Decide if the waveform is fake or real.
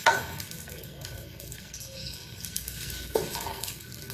fake